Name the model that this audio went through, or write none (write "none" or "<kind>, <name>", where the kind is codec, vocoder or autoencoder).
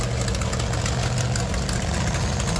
none